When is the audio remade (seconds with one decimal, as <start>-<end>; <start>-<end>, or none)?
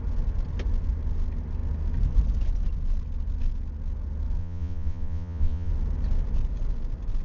4.4-5.7